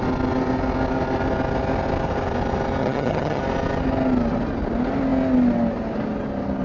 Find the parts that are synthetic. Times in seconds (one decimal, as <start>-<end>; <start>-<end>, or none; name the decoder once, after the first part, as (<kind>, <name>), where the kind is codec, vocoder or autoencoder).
2.8-3.4 (vocoder, HiFi-GAN)